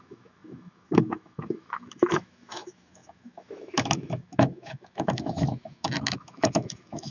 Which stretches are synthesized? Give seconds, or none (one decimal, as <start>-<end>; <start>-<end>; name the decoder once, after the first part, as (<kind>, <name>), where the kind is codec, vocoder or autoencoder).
0.0-7.1 (autoencoder, DAC-VAE)